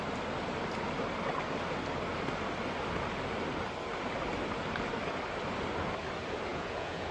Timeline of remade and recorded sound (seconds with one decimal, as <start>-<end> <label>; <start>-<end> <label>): 0.0-6.5 recorded; 6.5-7.1 remade